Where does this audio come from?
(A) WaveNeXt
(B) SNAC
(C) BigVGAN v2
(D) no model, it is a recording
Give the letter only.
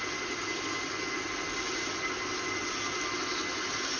D